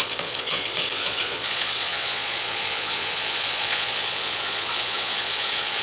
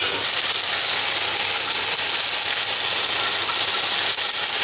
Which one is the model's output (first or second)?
first